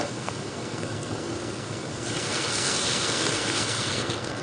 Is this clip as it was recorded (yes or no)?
no